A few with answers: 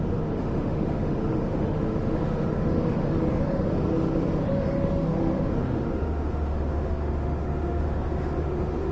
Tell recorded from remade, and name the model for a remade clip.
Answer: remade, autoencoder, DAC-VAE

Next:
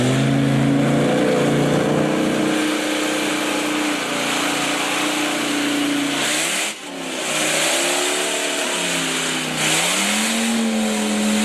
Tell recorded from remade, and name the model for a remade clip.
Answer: recorded